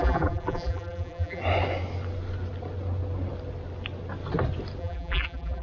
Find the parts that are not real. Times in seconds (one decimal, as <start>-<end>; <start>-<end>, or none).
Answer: 0.0-1.4; 4.8-5.6